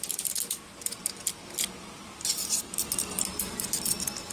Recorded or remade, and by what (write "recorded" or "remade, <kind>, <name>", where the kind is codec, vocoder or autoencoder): recorded